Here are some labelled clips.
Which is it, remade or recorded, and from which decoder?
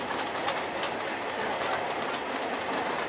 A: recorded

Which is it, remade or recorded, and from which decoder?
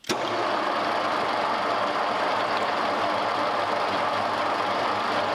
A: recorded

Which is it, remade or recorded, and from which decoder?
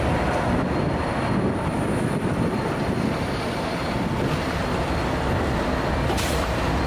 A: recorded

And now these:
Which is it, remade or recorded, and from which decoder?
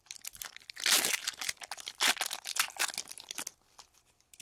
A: recorded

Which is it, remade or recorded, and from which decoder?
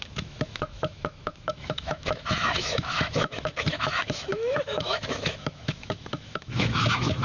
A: remade, autoencoder, DAC-VAE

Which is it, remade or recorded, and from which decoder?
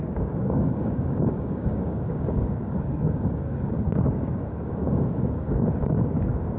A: remade, codec, DAC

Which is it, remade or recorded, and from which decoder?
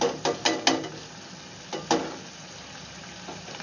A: recorded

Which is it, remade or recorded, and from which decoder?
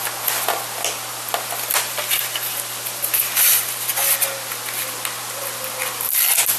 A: recorded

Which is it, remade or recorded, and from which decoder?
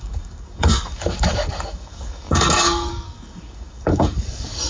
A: remade, codec, DAC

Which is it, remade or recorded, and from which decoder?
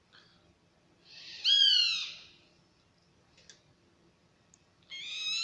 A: recorded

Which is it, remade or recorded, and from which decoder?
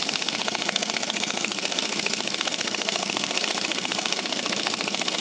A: remade, codec, SNAC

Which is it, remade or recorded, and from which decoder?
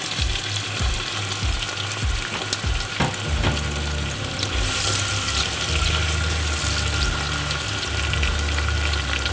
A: recorded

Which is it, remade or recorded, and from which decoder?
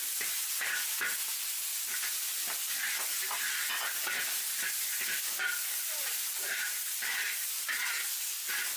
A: recorded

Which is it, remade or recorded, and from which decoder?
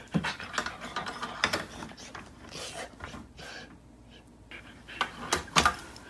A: recorded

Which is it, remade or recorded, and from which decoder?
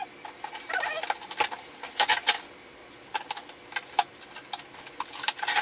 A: recorded